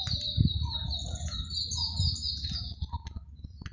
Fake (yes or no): no